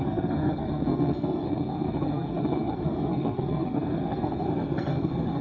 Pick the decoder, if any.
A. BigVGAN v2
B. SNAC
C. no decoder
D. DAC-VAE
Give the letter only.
B